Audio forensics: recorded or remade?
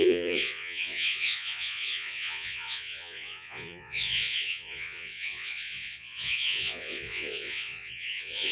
remade